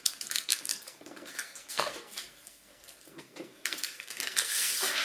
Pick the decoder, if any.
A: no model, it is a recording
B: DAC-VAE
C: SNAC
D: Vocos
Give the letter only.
C